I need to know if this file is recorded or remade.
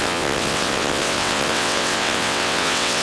remade